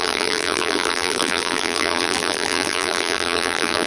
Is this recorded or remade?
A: remade